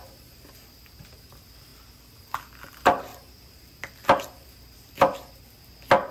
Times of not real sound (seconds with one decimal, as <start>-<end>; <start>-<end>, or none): none